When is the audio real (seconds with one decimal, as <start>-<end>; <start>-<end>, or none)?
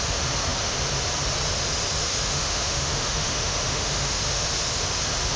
0.0-2.0; 4.5-5.4